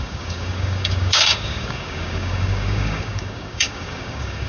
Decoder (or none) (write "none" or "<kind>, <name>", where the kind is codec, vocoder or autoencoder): codec, DAC